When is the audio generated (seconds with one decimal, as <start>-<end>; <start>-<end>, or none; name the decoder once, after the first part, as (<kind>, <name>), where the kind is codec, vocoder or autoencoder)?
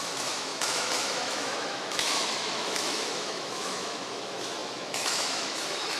0.0-6.0 (autoencoder, DAC-VAE)